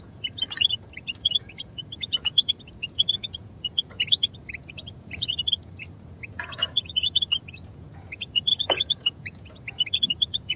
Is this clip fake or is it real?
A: fake